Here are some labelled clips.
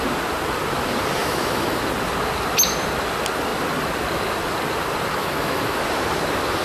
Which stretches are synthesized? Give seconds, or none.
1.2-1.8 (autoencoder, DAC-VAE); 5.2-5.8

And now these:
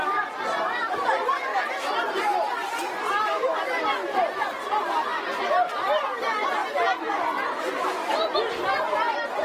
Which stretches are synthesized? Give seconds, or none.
1.5-3.1 (vocoder, BigVGAN v2)

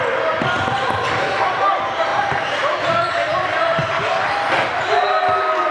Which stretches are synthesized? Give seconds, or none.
2.1-2.8 (vocoder, BigVGAN v2)

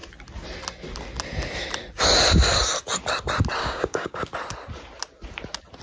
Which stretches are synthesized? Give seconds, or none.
3.6-4.2 (codec, DAC)

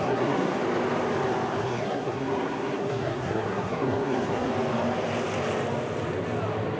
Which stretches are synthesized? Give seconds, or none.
0.0-0.6 (codec, SNAC); 1.6-4.5

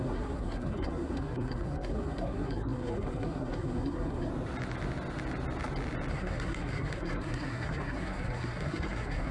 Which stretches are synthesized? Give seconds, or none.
0.0-4.3 (codec, SNAC); 6.1-9.3

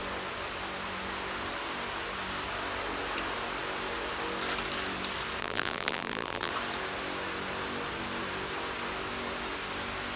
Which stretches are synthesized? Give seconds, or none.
5.4-6.5 (vocoder, BigVGAN v2)

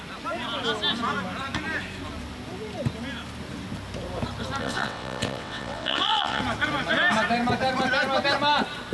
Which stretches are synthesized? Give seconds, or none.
4.6-6.4 (vocoder, WaveNeXt)